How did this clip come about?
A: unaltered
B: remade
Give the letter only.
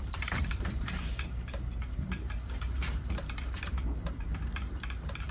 B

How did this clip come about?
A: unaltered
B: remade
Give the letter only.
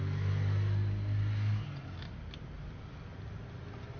A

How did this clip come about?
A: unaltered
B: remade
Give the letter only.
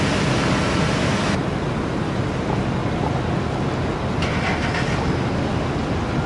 A